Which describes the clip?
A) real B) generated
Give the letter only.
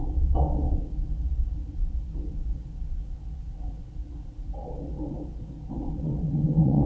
B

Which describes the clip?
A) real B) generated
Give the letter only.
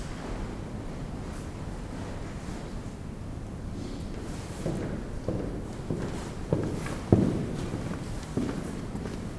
A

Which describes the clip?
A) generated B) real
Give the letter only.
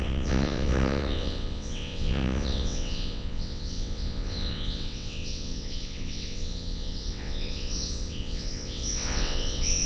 A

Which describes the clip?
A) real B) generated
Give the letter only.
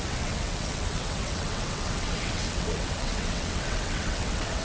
B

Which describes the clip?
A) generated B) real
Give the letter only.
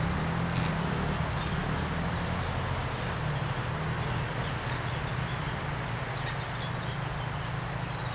B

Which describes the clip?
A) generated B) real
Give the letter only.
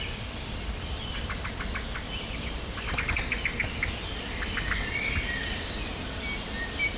B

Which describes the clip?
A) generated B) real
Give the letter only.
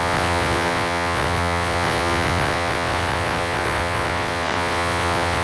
A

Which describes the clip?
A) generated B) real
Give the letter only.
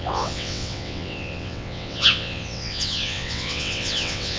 A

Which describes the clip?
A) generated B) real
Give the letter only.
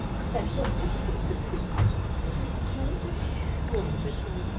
B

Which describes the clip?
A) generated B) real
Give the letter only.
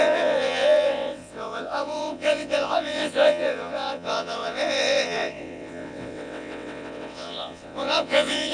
A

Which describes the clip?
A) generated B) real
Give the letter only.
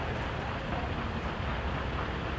B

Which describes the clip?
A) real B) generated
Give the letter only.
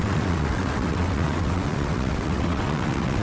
B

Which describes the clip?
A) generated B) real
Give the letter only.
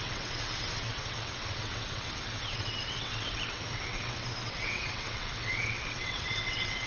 A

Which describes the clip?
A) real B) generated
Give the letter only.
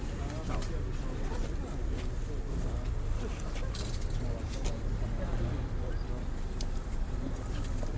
A